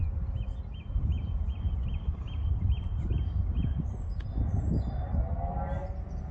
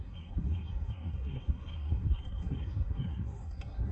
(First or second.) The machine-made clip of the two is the second